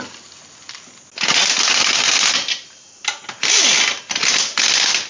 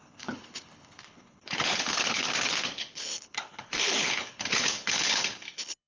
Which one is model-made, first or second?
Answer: second